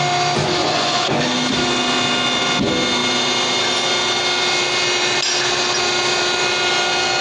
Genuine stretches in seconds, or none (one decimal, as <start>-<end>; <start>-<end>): 0.0-0.6; 1.2-7.2